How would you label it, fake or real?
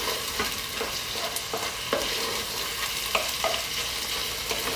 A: real